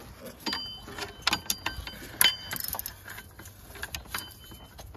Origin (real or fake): real